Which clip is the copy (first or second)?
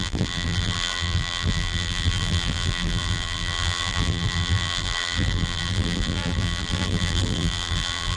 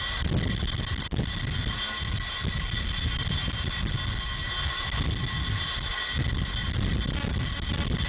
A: first